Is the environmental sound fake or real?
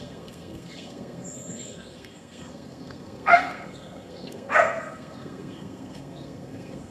fake